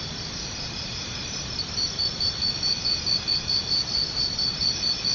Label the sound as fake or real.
real